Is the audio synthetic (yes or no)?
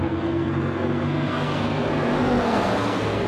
yes